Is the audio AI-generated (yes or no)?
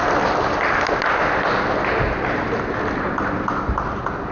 no